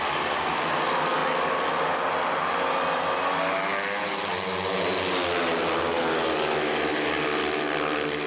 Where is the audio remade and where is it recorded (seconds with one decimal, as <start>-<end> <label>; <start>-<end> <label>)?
0.0-8.3 recorded